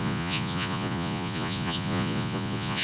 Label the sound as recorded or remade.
remade